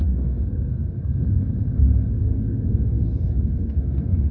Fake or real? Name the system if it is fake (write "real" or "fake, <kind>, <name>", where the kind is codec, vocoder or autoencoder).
fake, codec, SNAC